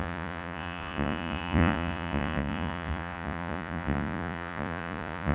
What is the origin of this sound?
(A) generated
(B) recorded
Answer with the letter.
A